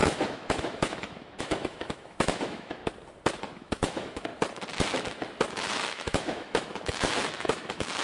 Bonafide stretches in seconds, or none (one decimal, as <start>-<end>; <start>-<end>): 2.8-3.4; 4.3-5.5